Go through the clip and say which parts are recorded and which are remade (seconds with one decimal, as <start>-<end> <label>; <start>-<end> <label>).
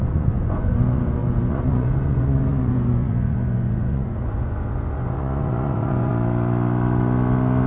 0.0-6.1 remade; 6.1-7.7 recorded